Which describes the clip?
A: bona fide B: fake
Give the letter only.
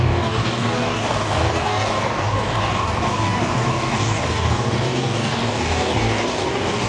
B